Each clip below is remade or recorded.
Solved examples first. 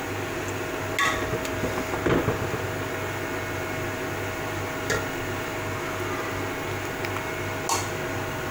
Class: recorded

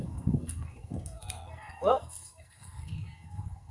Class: remade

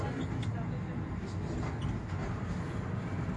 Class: recorded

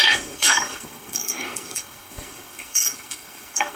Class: remade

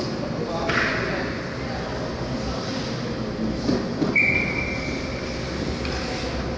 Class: recorded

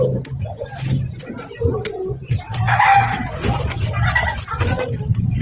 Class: recorded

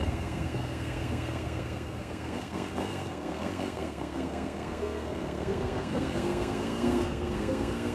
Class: remade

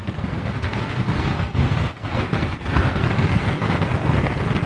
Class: remade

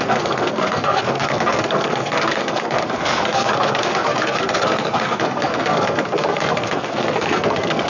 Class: remade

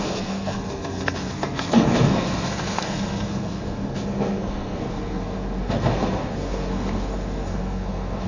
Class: remade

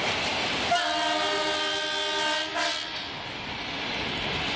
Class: recorded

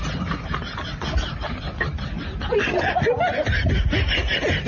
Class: recorded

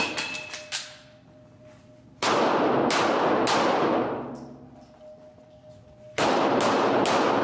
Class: recorded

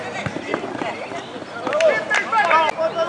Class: recorded